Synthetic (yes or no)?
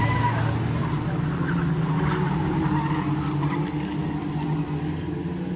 no